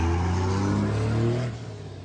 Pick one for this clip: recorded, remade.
recorded